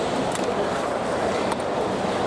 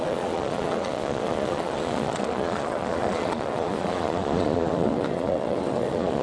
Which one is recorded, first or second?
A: first